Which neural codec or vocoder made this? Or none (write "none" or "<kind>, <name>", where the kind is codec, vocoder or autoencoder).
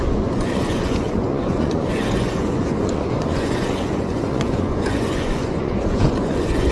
vocoder, Vocos